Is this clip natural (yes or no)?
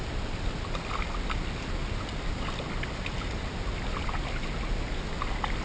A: yes